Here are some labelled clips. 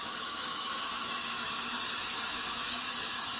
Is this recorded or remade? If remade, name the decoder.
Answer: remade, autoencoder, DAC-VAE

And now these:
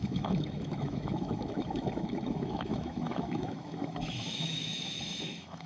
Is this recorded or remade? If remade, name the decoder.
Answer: remade, autoencoder, DAC-VAE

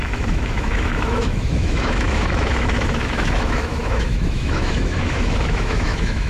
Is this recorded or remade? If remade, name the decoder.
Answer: remade, autoencoder, DAC-VAE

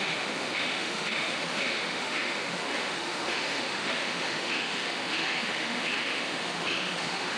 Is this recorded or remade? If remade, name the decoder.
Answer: remade, autoencoder, DAC-VAE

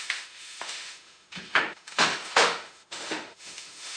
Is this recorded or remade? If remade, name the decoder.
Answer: remade, autoencoder, DAC-VAE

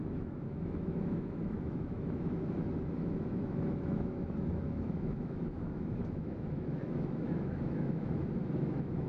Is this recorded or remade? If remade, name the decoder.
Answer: remade, autoencoder, DAC-VAE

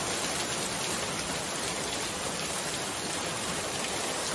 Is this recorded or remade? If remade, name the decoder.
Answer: recorded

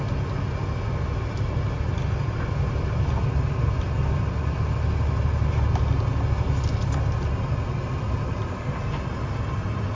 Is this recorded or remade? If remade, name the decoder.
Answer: recorded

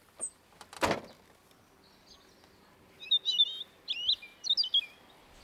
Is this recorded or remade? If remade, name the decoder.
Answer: recorded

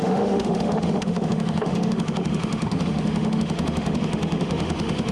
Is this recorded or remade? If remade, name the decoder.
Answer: remade, autoencoder, DAC-VAE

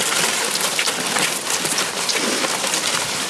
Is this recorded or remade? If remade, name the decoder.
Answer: recorded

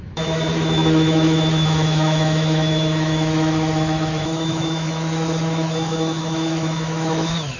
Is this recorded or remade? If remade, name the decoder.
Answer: remade, autoencoder, DAC-VAE